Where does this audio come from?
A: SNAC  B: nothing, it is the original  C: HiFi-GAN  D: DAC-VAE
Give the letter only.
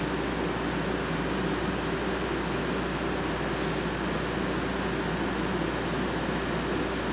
B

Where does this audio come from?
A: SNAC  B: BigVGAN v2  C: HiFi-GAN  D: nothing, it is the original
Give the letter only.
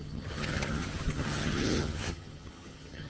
C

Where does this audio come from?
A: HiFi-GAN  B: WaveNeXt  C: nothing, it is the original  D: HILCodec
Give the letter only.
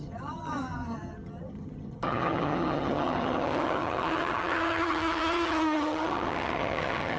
A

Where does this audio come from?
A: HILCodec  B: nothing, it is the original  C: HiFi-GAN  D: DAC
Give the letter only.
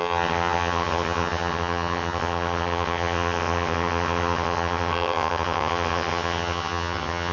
C